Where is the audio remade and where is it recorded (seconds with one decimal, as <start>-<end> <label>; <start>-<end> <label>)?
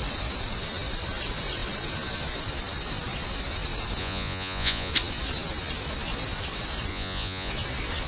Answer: 0.0-4.0 recorded; 4.0-4.9 remade; 4.9-6.9 recorded; 6.9-7.5 remade; 7.5-8.1 recorded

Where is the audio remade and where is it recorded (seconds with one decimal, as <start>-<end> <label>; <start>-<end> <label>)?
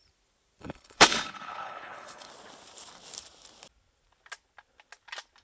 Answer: 0.0-0.6 recorded; 0.6-2.3 remade; 2.3-5.4 recorded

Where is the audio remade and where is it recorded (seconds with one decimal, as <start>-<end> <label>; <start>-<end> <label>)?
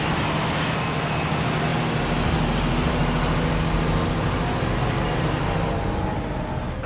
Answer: 0.0-6.9 recorded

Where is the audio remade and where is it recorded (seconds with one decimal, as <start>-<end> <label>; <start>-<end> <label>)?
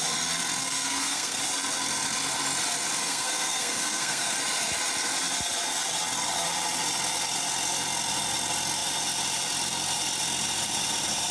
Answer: 0.0-0.6 recorded; 0.6-1.4 remade; 1.4-3.0 recorded; 3.0-4.4 remade; 4.4-11.3 recorded